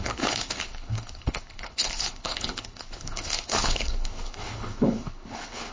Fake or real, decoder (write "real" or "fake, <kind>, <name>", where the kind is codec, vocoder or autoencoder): fake, codec, HILCodec